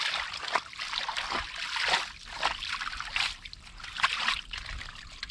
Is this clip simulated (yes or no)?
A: no